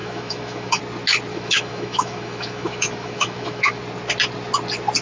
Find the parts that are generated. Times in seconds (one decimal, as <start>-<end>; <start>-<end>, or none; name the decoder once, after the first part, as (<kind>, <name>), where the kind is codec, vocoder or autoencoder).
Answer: 0.0-0.8 (autoencoder, DAC-VAE); 1.3-3.8